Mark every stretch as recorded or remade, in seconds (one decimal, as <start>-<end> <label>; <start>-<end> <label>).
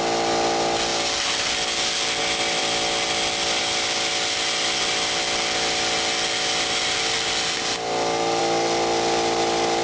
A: 0.0-0.9 recorded; 0.9-2.2 remade; 2.2-2.6 recorded; 2.6-3.6 remade; 3.6-4.8 recorded; 4.8-8.4 remade; 8.4-9.8 recorded